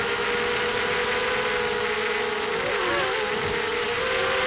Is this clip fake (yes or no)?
no